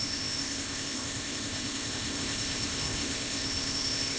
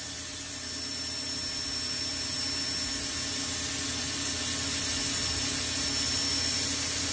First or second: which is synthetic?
first